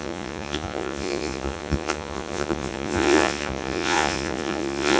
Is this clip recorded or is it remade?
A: remade